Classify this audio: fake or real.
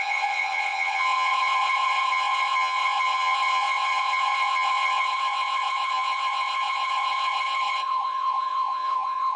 fake